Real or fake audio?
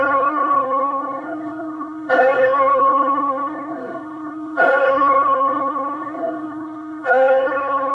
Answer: fake